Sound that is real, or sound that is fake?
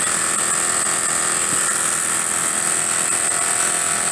real